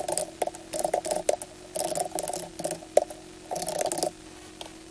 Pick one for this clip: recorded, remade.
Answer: recorded